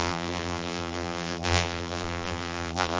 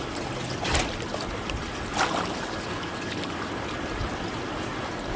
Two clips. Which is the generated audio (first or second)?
first